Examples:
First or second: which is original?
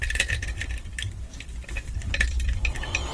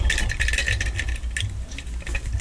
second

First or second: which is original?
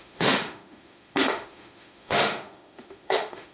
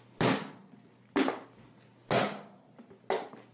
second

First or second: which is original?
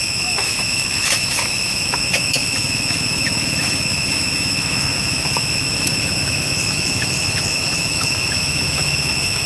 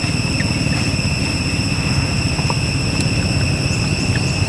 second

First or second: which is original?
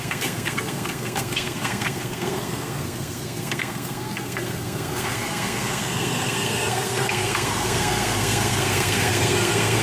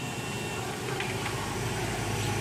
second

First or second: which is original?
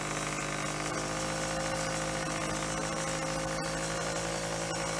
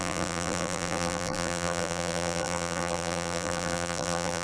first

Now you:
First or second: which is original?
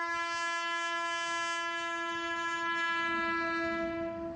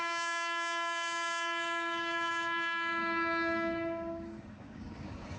first